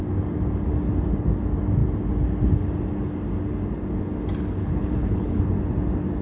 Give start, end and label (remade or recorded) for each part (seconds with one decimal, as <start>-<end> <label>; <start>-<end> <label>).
0.0-4.6 recorded; 4.6-5.4 remade; 5.4-6.2 recorded